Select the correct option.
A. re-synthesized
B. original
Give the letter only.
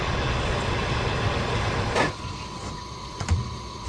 A